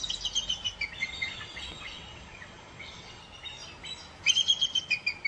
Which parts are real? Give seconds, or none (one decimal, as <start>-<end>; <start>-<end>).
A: 0.0-1.0; 3.2-5.3